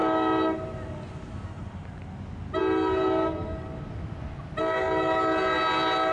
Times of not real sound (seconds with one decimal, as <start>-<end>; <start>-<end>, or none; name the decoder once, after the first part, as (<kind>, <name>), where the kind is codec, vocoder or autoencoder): none